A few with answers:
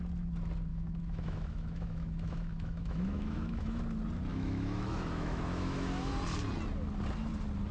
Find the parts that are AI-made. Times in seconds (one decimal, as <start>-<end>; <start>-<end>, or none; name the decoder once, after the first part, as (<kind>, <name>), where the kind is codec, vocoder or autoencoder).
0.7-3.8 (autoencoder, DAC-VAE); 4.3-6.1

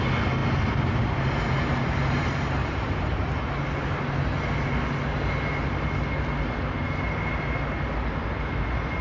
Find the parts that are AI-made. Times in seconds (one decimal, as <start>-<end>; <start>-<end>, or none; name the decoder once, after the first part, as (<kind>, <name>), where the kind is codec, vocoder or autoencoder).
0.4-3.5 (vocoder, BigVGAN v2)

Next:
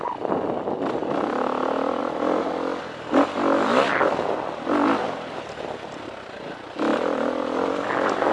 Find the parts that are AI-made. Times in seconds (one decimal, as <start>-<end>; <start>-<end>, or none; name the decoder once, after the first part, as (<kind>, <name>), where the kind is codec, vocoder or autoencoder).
none

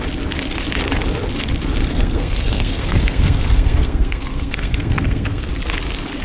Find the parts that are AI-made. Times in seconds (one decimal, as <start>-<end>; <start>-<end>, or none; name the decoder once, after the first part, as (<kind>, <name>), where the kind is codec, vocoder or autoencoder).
1.8-5.5 (codec, SNAC)

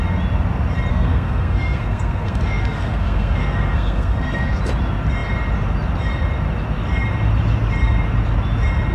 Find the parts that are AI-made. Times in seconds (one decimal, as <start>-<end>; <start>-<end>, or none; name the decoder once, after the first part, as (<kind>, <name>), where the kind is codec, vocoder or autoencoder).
0.9-4.6 (codec, SNAC)

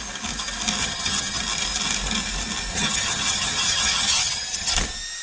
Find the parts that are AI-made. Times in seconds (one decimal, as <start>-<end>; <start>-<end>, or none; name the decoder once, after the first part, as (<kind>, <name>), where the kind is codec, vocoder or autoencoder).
0.8-1.4 (vocoder, HiFi-GAN); 2.7-4.7